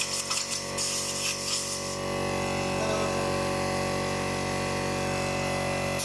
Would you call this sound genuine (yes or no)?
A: yes